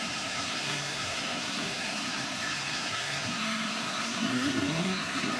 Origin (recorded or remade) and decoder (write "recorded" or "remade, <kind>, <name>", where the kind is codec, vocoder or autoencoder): remade, codec, SNAC